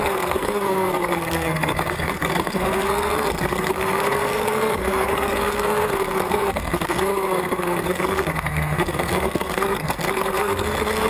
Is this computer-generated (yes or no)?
yes